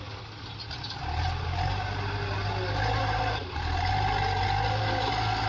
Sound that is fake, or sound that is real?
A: real